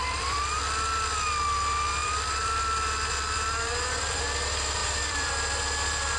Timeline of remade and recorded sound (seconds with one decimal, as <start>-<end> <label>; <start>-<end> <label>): 0.0-0.6 remade; 0.6-2.0 recorded; 2.0-4.2 remade; 4.2-4.8 recorded; 4.8-5.3 remade; 5.3-6.2 recorded